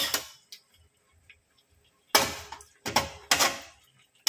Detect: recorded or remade recorded